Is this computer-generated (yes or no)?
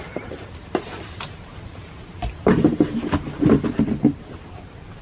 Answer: yes